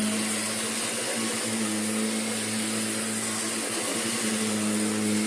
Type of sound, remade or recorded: recorded